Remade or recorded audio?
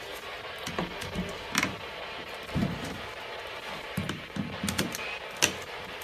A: recorded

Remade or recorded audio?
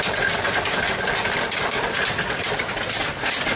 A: recorded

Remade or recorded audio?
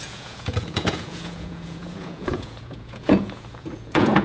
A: remade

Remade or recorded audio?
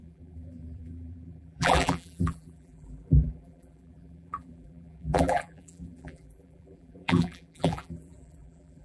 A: remade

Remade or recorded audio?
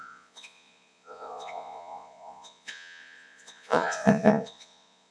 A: remade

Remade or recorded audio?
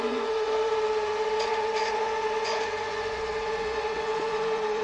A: remade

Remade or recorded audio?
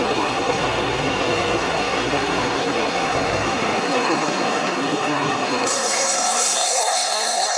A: remade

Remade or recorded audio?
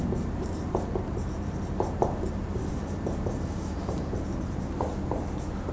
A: remade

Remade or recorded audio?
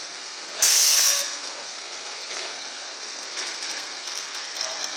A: remade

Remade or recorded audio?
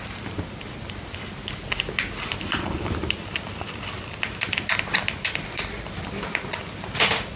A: recorded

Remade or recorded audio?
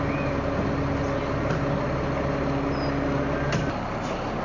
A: recorded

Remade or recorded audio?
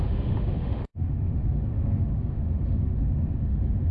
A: remade